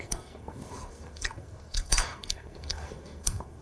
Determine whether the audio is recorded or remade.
remade